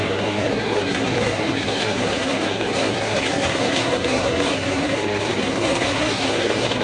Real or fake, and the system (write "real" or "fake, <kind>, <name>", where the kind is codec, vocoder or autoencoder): fake, codec, SNAC